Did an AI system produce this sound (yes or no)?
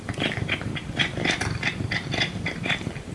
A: yes